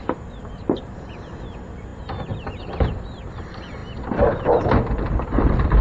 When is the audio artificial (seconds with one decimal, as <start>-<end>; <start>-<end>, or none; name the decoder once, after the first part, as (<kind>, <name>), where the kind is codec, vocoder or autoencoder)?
none